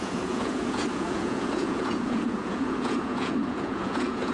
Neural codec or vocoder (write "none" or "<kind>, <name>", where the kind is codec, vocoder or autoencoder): vocoder, Vocos